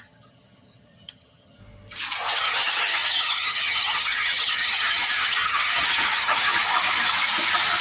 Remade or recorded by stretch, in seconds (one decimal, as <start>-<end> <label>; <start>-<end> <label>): 0.0-1.6 remade; 1.6-2.4 recorded; 2.4-6.5 remade; 6.5-7.8 recorded